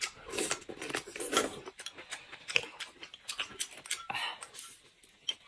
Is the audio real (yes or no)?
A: yes